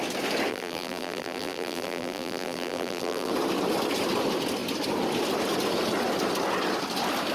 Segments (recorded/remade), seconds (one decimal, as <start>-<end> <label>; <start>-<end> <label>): 0.0-0.5 recorded; 0.5-3.3 remade; 3.3-7.3 recorded